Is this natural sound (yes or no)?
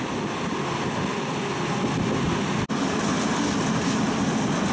yes